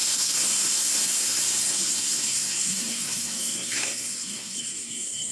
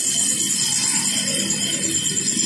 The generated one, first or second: first